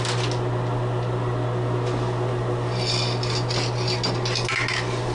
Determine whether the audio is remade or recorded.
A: recorded